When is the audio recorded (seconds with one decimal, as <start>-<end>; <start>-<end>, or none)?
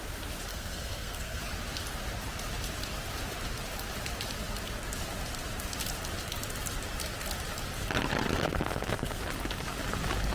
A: 0.0-0.5; 1.4-8.4; 9.2-10.3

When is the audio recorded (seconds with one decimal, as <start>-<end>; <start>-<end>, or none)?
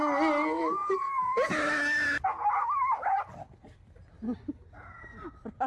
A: 0.0-0.8; 1.5-5.7